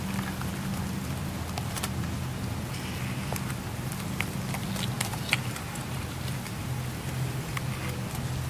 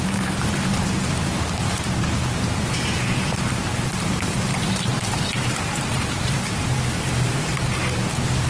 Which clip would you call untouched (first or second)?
first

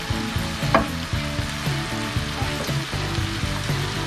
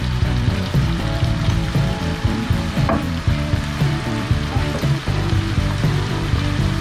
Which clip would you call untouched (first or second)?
first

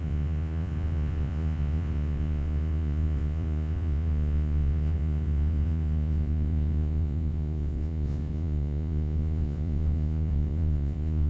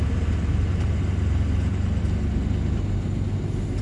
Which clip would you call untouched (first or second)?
second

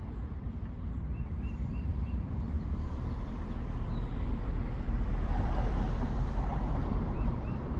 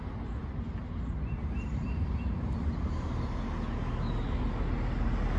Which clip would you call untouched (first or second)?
second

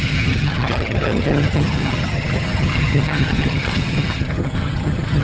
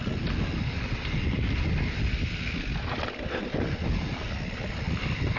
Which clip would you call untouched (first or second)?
second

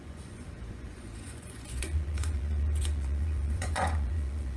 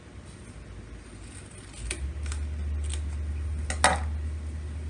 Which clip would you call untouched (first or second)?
second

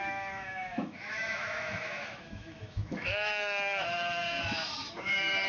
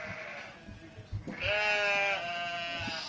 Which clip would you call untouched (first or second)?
second